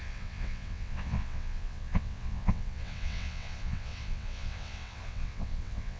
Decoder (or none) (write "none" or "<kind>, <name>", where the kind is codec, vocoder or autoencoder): vocoder, WaveNeXt